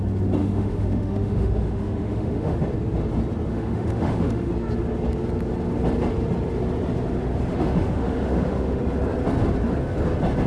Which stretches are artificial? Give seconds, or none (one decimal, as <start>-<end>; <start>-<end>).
0.4-2.6; 3.5-4.5; 7.5-8.8